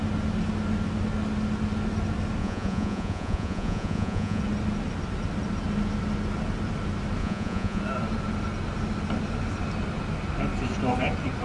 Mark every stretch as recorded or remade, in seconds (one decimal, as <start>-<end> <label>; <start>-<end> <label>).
0.0-2.4 recorded; 2.4-4.4 remade; 4.4-7.2 recorded; 7.2-7.8 remade; 7.8-11.4 recorded